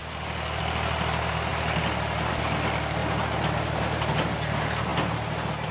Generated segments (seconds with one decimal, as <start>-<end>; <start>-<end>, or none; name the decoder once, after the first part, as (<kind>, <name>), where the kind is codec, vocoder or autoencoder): 0.0-0.6 (vocoder, BigVGAN v2); 3.0-3.8